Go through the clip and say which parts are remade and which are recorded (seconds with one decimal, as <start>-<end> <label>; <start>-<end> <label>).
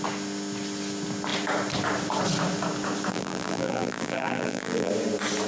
0.0-3.1 recorded; 3.1-4.9 remade; 4.9-5.5 recorded